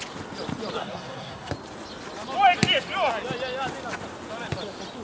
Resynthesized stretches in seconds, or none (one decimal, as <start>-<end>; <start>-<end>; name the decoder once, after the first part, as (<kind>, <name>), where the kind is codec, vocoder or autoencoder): 0.8-1.5 (codec, SNAC)